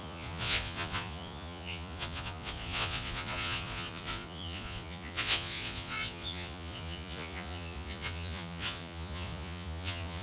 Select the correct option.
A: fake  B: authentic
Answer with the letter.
A